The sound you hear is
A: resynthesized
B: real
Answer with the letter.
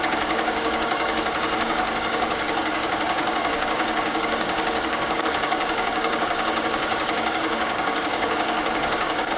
A